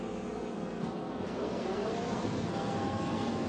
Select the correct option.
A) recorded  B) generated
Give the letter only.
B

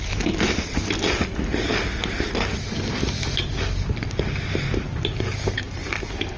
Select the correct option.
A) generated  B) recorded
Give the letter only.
B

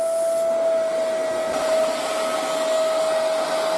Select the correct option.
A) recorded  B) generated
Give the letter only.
A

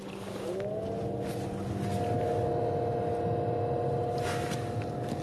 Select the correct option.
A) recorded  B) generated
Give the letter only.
A